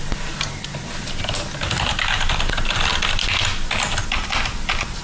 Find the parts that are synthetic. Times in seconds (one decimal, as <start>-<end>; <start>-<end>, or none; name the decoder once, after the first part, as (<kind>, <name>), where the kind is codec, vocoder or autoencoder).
none